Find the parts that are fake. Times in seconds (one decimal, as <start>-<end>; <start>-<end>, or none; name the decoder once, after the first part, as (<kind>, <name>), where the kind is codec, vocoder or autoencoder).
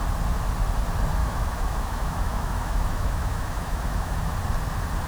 1.2-4.3 (autoencoder, DAC-VAE)